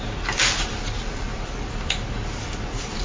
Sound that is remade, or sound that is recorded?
recorded